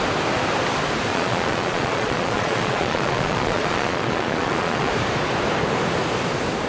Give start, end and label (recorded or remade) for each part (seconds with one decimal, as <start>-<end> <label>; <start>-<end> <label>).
0.0-1.1 recorded; 1.1-4.9 remade; 4.9-6.7 recorded